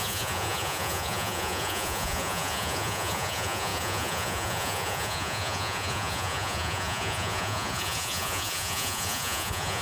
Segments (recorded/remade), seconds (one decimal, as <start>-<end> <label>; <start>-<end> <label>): 0.0-9.8 remade